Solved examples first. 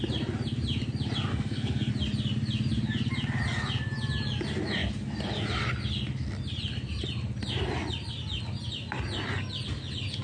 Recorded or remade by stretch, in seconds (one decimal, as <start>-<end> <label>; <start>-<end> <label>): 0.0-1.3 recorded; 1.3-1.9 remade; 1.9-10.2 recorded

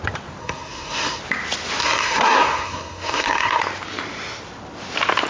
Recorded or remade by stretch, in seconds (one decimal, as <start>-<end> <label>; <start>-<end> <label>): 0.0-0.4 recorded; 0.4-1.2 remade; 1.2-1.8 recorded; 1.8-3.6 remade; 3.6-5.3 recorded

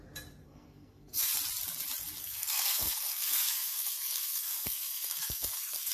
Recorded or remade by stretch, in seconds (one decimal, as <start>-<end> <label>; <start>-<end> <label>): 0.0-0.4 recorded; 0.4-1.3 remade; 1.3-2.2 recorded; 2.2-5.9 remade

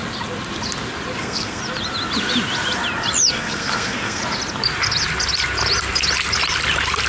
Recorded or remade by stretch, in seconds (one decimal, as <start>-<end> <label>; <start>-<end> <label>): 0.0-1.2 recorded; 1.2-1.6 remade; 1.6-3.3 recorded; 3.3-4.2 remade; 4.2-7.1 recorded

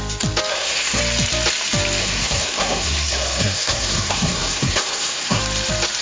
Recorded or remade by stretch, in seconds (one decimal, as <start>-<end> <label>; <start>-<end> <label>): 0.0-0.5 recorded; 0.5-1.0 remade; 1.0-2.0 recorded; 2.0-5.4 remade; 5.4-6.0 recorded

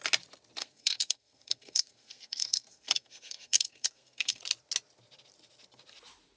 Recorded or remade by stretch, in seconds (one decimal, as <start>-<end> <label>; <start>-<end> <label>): 0.0-0.6 recorded; 0.6-4.4 remade; 4.4-6.4 recorded

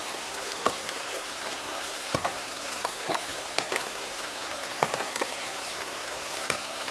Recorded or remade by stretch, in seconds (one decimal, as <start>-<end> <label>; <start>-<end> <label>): 0.0-6.9 remade